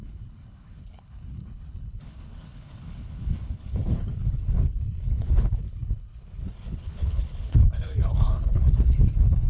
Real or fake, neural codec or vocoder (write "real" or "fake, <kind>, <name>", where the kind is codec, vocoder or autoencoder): fake, codec, HILCodec